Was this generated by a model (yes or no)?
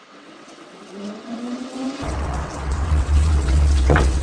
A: yes